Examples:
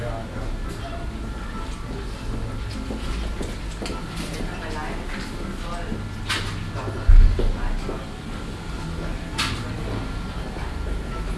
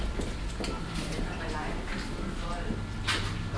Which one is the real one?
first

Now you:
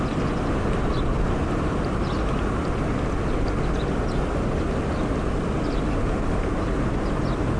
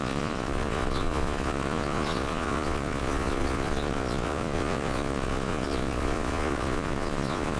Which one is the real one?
first